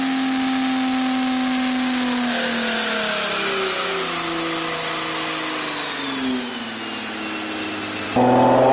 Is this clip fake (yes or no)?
no